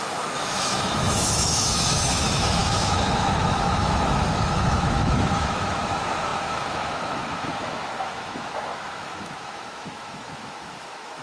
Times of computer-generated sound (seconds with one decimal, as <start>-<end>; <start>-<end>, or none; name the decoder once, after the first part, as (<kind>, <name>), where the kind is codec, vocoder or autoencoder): 0.0-11.2 (autoencoder, DAC-VAE)